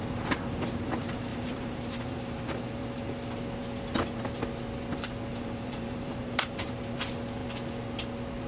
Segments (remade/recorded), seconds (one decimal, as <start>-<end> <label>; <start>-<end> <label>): 0.0-1.3 recorded; 1.3-2.8 remade; 2.8-5.3 recorded; 5.3-6.6 remade; 6.6-8.5 recorded